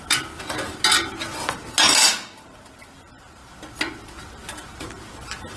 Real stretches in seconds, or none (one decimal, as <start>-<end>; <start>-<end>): 0.0-5.6